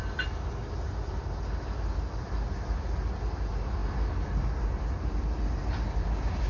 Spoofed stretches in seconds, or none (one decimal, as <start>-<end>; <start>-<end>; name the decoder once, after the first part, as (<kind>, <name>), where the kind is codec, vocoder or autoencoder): none